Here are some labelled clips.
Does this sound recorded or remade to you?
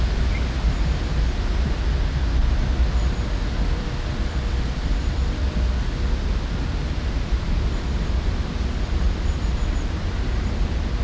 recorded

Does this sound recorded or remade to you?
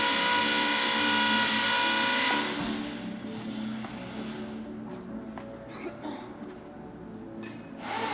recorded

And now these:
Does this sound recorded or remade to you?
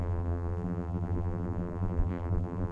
remade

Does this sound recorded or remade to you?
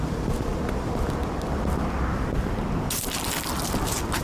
recorded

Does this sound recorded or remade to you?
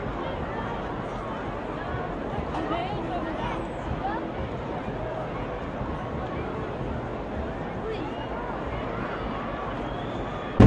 recorded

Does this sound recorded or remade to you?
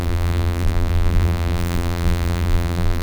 remade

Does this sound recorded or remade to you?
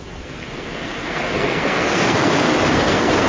remade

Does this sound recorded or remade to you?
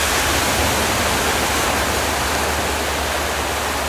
recorded